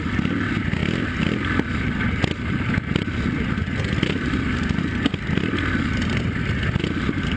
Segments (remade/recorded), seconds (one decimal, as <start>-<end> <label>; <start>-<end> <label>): 0.0-7.4 recorded